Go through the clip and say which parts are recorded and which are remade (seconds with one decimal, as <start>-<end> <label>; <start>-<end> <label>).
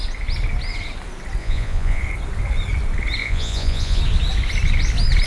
0.0-1.4 recorded; 1.4-2.0 remade; 2.0-3.2 recorded; 3.2-4.0 remade; 4.0-5.3 recorded